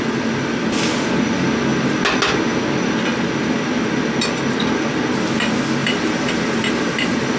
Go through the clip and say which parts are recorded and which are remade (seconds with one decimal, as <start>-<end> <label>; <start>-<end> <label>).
0.0-5.8 recorded; 5.8-6.6 remade; 6.6-7.4 recorded